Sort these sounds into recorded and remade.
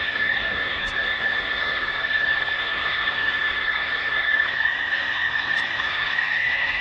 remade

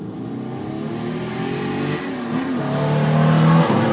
recorded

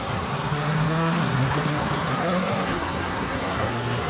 remade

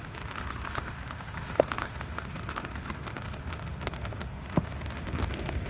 remade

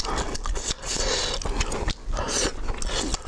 recorded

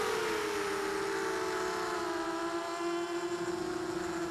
recorded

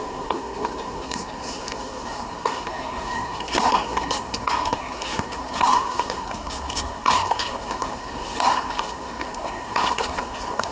remade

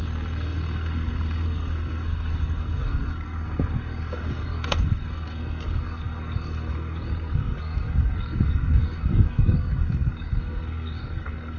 remade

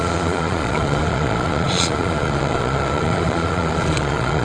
remade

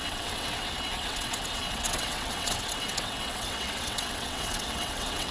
remade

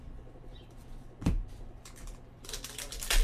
remade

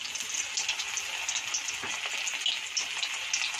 recorded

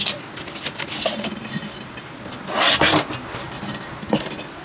recorded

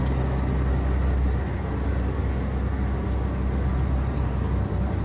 recorded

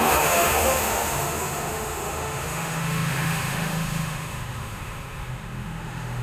remade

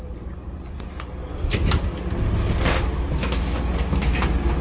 recorded